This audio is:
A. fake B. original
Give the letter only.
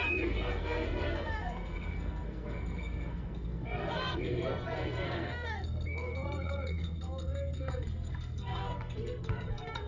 A